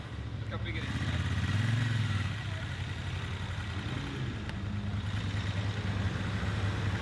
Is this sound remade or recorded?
recorded